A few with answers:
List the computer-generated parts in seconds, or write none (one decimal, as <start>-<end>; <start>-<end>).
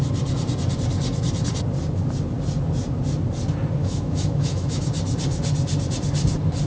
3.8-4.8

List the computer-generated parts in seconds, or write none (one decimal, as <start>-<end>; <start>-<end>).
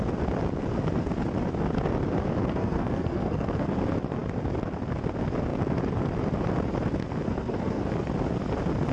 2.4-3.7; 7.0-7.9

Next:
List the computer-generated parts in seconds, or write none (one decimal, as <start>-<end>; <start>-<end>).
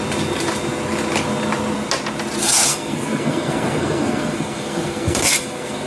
2.4-5.9